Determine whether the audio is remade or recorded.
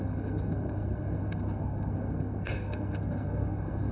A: remade